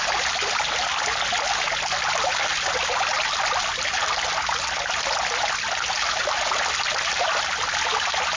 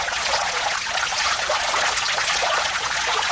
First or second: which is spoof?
second